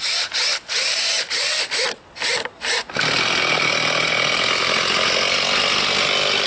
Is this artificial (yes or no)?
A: no